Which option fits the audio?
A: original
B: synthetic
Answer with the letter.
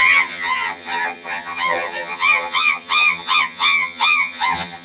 B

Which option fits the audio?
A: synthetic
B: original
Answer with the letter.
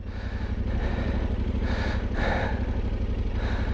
B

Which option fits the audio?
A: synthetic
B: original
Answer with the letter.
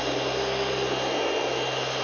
B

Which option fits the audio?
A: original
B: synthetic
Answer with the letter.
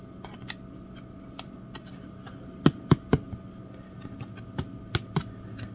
A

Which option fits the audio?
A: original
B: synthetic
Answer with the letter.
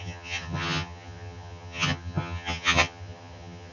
B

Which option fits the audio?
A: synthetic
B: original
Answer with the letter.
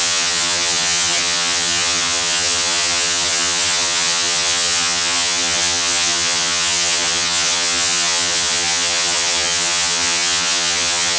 A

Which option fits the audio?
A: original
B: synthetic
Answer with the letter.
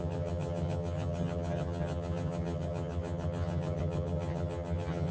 B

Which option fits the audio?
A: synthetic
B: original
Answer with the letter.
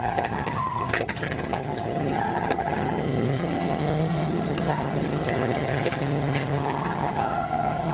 A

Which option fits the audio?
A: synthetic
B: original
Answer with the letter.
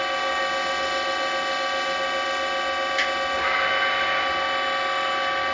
B